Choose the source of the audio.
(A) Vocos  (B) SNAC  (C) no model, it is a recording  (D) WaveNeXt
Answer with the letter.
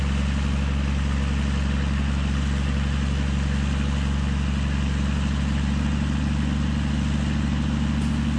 C